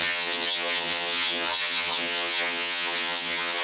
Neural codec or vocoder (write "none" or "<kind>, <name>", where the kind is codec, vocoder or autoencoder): vocoder, HiFi-GAN